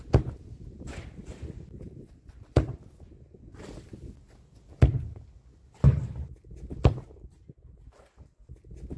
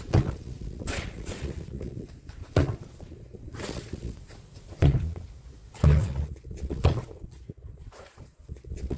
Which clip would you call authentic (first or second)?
first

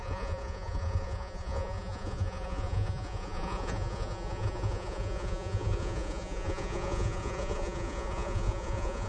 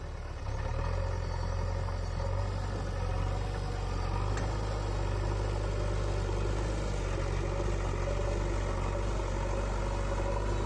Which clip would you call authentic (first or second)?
second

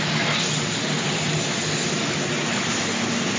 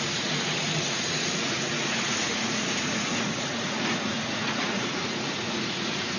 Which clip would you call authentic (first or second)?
first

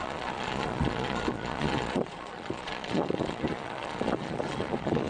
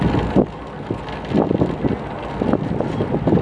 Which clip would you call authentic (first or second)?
second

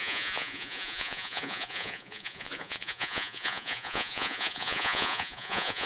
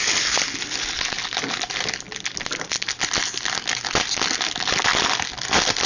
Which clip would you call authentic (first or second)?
second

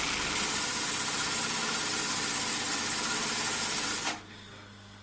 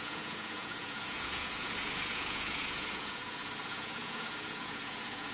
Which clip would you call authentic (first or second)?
first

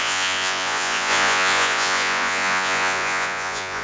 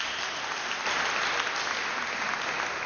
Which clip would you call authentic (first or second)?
second